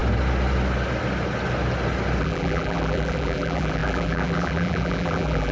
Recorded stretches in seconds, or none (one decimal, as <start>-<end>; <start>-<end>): 0.0-2.2